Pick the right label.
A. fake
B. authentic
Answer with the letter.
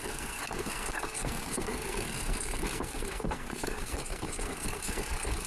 A